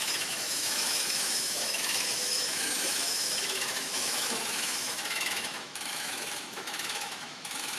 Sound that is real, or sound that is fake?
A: fake